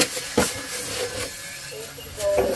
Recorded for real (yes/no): yes